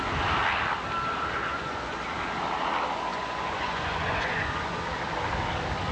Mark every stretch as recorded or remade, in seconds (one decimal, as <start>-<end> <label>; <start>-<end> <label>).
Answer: 0.0-1.4 recorded; 1.4-2.0 remade; 2.0-3.1 recorded; 3.1-4.8 remade; 4.8-5.9 recorded